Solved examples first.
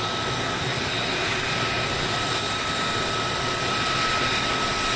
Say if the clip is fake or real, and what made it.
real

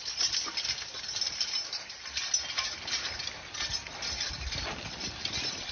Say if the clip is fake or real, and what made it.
real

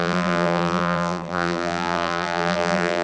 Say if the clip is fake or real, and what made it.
fake, vocoder, BigVGAN v2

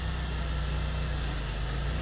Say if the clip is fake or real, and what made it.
real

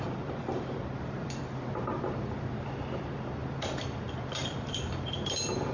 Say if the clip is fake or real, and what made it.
fake, vocoder, BigVGAN v2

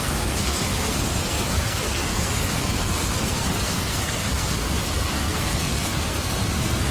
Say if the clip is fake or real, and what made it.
fake, codec, SNAC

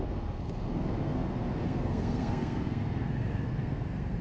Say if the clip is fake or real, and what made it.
fake, codec, SNAC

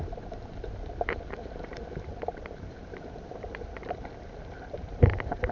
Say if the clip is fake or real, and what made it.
fake, vocoder, BigVGAN v2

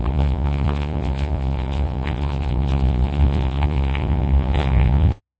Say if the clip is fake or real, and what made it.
fake, vocoder, Vocos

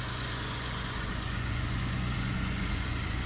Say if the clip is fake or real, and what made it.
fake, vocoder, Vocos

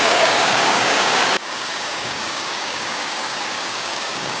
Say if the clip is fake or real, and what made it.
fake, codec, DAC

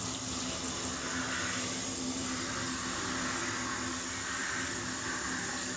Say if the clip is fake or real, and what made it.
real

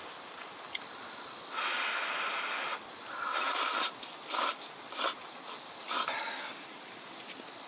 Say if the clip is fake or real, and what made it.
real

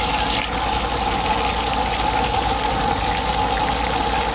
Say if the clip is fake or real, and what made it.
real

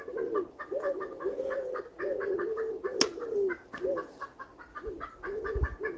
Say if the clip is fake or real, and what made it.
real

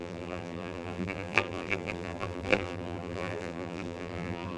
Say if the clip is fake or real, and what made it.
fake, vocoder, BigVGAN v2